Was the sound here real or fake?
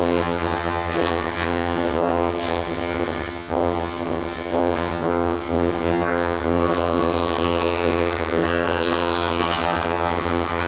fake